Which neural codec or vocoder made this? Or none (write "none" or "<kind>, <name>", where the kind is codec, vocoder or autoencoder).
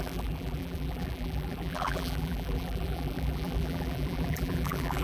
vocoder, BigVGAN v2